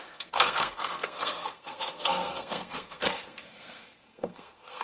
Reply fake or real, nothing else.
fake